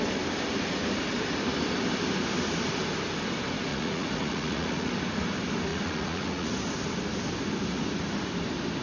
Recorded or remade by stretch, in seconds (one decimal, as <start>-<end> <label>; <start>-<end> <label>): 0.0-3.7 recorded; 3.7-4.9 remade; 4.9-5.7 recorded; 5.7-6.5 remade; 6.5-8.8 recorded